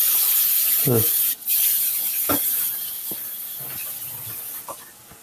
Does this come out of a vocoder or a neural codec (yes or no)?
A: no